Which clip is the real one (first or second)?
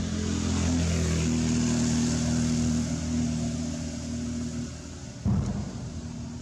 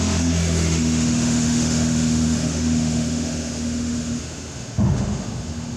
first